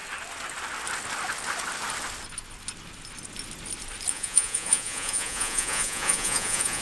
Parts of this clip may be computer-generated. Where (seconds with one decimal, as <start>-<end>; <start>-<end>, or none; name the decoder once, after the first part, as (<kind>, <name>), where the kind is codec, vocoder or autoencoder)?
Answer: 4.1-6.8 (vocoder, Vocos)